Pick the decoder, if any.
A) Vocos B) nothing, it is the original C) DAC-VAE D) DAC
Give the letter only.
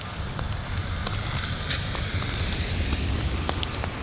B